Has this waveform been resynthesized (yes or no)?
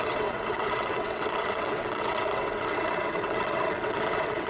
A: yes